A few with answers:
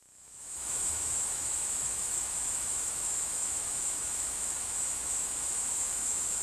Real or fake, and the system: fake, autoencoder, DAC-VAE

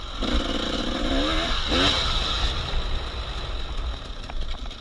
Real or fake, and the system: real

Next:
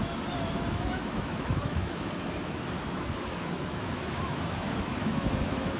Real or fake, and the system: fake, autoencoder, DAC-VAE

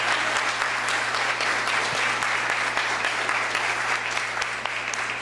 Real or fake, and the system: real